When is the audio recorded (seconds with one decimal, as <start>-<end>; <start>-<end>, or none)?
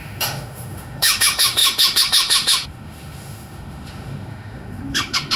none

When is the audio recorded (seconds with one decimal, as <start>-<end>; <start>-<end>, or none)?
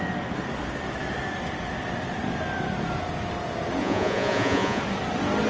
0.0-3.8; 4.8-5.5